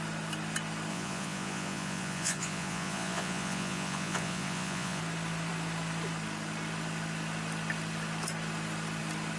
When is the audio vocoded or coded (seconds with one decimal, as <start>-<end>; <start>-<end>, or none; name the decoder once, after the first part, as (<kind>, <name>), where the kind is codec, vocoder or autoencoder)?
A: 0.9-5.0 (vocoder, Vocos)